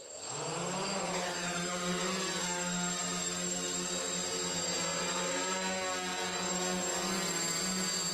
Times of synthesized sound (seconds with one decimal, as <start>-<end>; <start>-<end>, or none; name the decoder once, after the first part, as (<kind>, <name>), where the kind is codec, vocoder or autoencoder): none